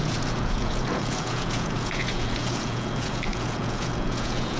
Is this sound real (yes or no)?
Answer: no